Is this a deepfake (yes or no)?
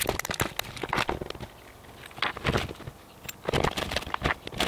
no